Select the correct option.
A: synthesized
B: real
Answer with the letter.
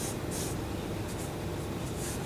B